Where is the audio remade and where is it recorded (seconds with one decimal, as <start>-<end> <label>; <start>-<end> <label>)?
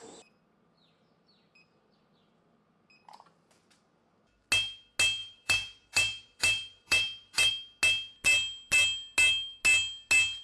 0.0-5.2 recorded; 5.2-7.5 remade; 7.5-10.4 recorded